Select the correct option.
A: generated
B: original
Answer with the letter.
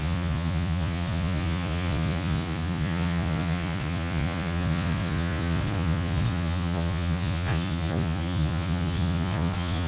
A